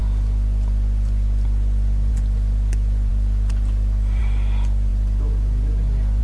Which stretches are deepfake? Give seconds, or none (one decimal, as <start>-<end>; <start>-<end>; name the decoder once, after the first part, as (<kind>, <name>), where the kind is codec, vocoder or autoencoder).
none